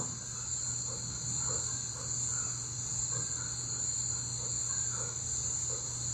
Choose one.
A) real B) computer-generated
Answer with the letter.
A